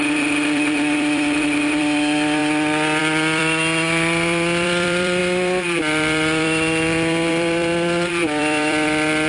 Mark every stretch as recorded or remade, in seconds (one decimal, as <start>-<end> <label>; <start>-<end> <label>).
0.0-2.4 remade; 2.4-3.0 recorded; 3.0-9.3 remade